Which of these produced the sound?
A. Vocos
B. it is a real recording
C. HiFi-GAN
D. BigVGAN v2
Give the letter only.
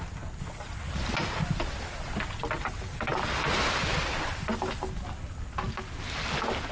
B